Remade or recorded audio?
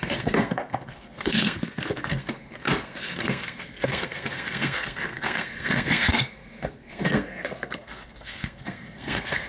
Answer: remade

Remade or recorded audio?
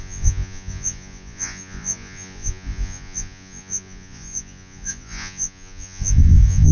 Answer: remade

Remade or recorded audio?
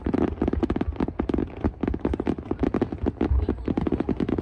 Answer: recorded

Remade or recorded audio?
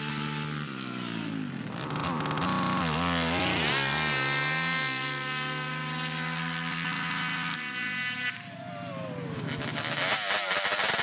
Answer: recorded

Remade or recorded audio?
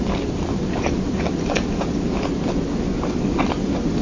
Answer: recorded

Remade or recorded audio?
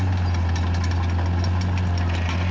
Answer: recorded